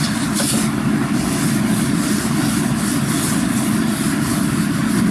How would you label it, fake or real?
real